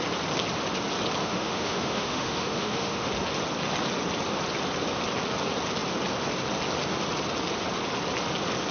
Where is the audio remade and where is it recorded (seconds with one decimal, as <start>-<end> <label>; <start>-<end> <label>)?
0.0-1.2 recorded; 1.2-3.1 remade; 3.1-8.7 recorded